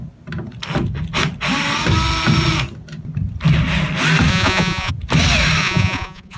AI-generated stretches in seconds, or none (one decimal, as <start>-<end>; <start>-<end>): 4.3-4.9; 5.6-6.4